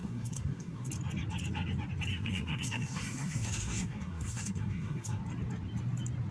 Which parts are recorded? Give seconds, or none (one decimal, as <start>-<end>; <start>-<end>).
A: 0.9-2.1; 5.2-6.3